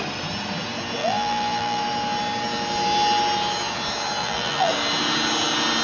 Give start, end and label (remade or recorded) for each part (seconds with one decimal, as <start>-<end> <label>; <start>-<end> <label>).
0.0-1.0 recorded; 1.0-1.8 remade; 1.8-4.2 recorded; 4.2-4.7 remade; 4.7-5.8 recorded